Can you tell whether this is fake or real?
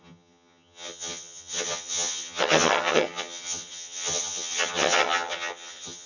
fake